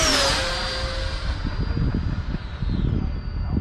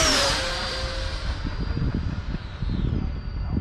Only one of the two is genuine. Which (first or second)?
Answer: first